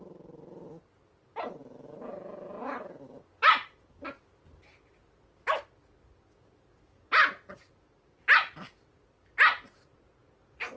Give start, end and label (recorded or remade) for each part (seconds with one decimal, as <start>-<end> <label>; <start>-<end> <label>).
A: 0.0-10.8 recorded